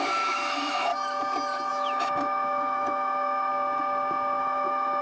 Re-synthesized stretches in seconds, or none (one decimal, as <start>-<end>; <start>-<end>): 0.0-0.9; 1.7-3.5; 4.4-5.0